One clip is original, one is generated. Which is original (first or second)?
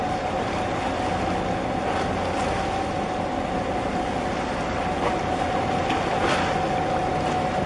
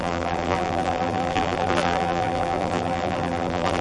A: first